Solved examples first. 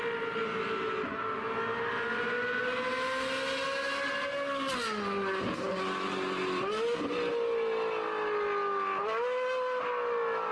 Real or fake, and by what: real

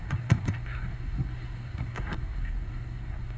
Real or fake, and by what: fake, codec, SNAC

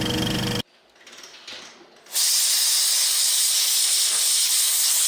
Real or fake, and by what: real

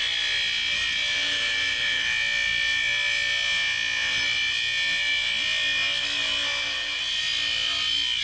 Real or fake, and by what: real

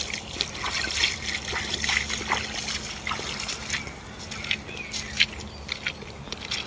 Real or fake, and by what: real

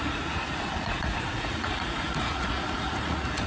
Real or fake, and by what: fake, vocoder, Vocos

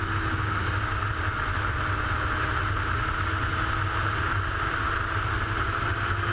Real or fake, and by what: real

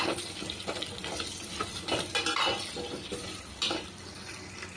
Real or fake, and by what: real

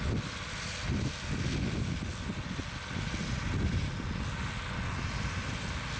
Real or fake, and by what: real